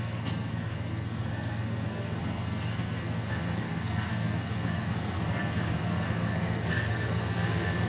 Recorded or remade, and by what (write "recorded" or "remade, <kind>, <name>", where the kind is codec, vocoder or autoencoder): remade, codec, SNAC